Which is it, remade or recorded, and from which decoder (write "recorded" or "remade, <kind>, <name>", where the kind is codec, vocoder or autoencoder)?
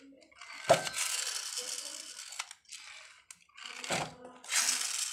recorded